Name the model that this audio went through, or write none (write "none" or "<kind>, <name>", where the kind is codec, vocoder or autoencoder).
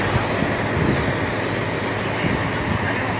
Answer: none